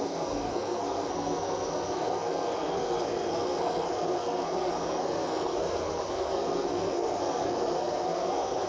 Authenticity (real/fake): fake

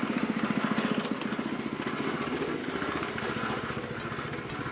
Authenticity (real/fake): real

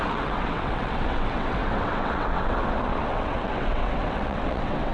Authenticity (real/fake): fake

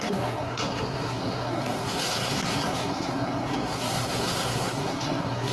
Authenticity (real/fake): fake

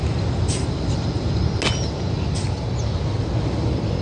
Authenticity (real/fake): real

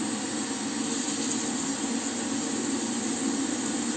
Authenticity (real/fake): real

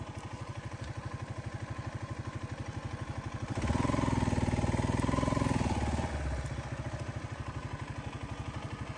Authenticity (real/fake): real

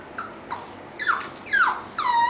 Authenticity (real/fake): real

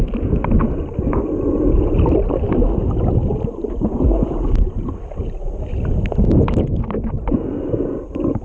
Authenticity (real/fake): real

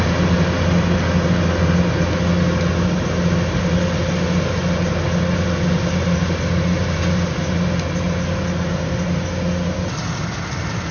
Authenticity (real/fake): real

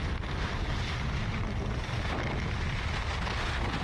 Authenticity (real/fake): real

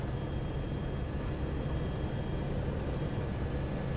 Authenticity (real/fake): real